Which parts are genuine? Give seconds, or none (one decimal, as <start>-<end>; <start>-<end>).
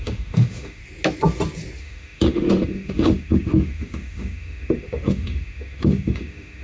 0.8-1.8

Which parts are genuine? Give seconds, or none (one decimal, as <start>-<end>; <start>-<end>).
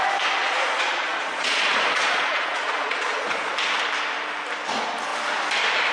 0.0-0.4; 3.5-5.9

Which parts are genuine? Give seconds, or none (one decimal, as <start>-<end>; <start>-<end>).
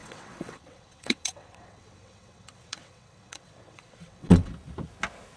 4.5-5.4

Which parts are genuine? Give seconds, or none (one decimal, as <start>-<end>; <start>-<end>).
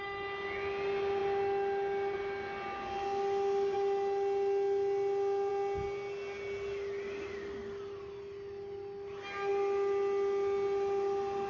0.0-11.5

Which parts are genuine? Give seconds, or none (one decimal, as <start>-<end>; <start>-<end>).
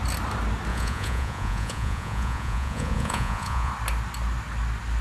0.0-0.7; 3.7-5.0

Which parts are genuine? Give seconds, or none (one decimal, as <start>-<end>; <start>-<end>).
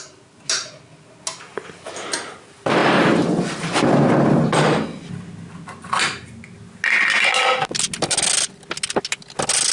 0.0-9.7